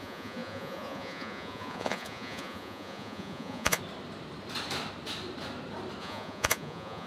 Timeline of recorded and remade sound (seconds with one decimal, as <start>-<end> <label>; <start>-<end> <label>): 0.0-3.8 remade; 3.8-6.0 recorded; 6.0-7.1 remade